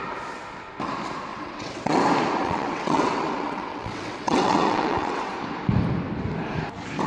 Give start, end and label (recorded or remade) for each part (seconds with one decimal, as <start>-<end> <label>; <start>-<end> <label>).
0.0-1.3 recorded; 1.3-2.0 remade; 2.0-2.4 recorded; 2.4-5.3 remade; 5.3-7.1 recorded